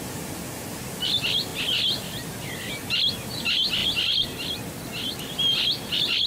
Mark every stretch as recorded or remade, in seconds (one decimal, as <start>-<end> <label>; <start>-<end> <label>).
0.0-6.3 recorded